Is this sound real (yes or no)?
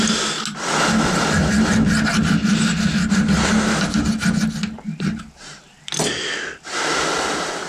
yes